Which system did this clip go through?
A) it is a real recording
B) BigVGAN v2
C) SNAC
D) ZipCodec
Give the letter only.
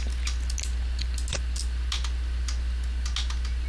A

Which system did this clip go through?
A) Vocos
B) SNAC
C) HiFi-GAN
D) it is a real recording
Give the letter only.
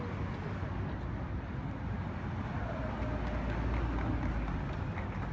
D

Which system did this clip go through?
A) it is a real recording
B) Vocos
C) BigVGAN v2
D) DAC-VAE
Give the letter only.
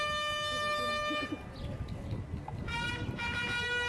A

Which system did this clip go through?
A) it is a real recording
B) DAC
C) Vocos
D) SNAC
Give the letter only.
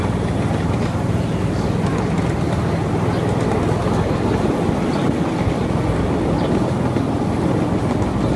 A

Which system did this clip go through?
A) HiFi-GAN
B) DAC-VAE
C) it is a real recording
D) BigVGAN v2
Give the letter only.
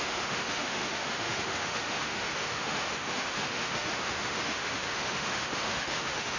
B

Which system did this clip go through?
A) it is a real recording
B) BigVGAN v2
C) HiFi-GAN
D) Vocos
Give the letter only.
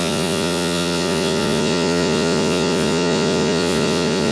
D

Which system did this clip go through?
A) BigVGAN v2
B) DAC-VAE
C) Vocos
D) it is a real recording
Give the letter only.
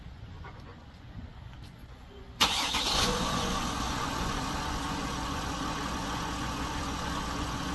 C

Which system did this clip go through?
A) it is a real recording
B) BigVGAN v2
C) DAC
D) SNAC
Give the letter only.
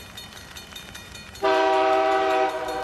B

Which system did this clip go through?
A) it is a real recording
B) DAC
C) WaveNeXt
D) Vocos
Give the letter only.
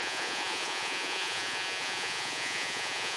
D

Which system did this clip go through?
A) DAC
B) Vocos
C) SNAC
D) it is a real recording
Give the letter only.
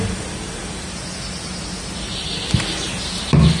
D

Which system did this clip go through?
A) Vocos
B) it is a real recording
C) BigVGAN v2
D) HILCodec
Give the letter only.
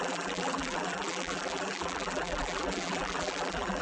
C